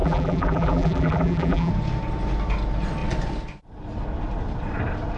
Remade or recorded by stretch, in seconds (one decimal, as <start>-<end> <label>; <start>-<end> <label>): 0.0-1.7 remade; 1.7-5.2 recorded